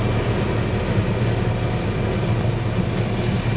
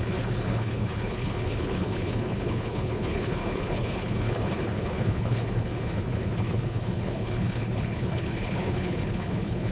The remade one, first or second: second